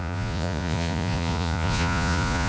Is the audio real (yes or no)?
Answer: no